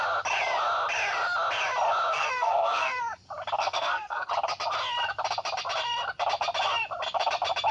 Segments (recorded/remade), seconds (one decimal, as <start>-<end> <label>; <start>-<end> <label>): 0.0-2.1 recorded; 2.1-3.0 remade; 3.0-3.6 recorded; 3.6-4.3 remade; 4.3-7.7 recorded